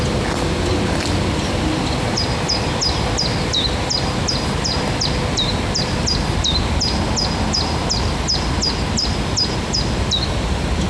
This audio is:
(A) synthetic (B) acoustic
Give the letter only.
B